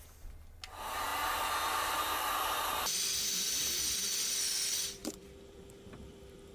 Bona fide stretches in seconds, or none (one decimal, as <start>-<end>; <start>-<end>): 0.0-5.0